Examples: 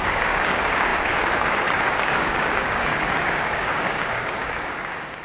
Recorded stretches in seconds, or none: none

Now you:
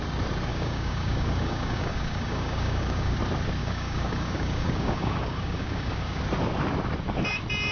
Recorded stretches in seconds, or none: 0.0-0.5; 3.2-3.6; 6.2-7.7

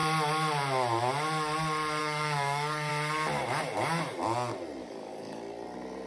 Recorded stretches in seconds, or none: 0.0-2.0; 2.9-4.8; 5.4-6.1